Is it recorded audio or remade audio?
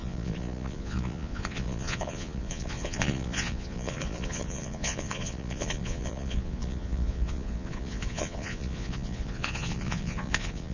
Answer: remade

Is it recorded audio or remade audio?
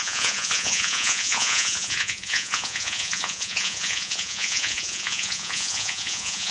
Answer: remade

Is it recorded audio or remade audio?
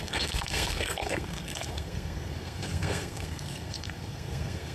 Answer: remade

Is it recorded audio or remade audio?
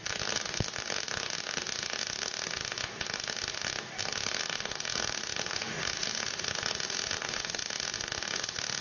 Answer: recorded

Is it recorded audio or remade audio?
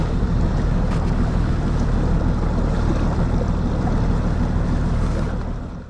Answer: recorded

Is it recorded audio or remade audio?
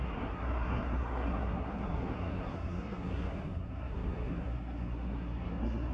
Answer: remade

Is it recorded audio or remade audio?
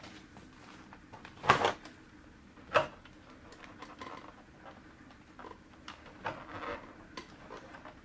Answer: recorded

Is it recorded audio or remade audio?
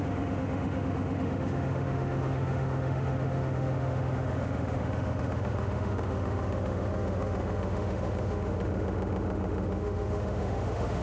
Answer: remade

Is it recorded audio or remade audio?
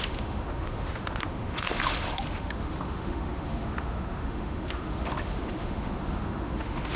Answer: remade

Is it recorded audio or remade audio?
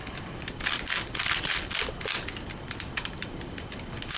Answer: recorded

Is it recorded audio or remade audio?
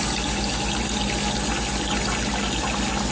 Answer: recorded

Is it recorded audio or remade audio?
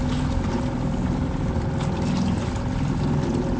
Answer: recorded